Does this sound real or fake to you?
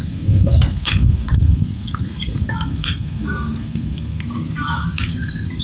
fake